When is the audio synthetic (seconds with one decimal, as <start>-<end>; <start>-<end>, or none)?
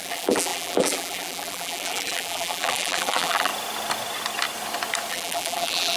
0.0-3.5; 5.1-6.0